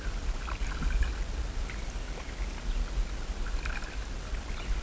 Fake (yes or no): no